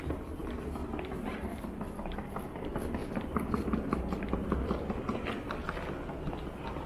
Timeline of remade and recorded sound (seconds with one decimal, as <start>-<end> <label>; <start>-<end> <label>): 0.0-6.9 recorded